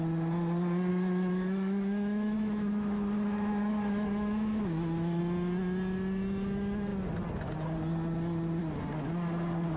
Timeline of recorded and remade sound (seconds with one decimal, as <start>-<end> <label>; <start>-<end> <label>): 0.0-0.9 recorded; 0.9-5.2 remade; 5.2-9.8 recorded